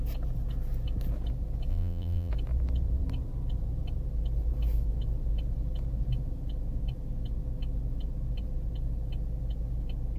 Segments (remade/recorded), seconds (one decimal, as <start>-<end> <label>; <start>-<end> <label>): 0.0-1.7 recorded; 1.7-2.3 remade; 2.3-10.2 recorded